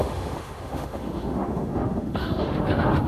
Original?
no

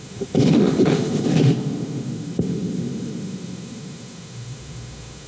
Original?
no